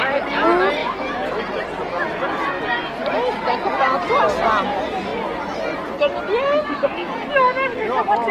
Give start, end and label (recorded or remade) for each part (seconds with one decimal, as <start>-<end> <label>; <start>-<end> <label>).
0.0-8.3 recorded